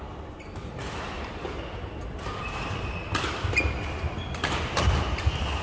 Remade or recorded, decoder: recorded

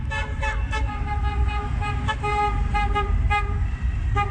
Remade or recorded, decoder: recorded